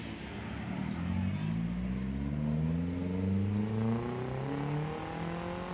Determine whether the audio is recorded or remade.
recorded